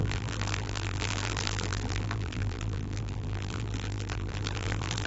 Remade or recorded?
remade